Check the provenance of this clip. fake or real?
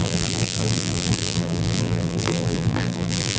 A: fake